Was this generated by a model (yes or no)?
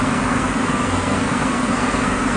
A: yes